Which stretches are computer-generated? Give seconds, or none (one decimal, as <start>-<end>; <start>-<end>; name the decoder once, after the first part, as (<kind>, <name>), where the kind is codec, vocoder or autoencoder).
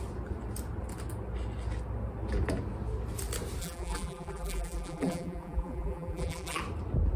3.6-6.6 (vocoder, BigVGAN v2)